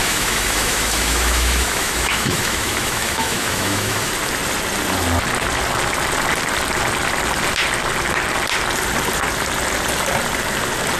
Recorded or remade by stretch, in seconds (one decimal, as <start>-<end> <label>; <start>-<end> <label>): 0.0-4.1 remade; 4.1-11.0 recorded